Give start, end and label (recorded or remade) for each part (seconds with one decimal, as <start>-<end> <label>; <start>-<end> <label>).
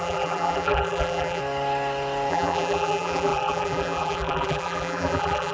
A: 0.0-1.4 remade; 1.4-2.3 recorded; 2.3-5.5 remade